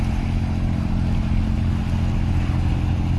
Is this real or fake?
real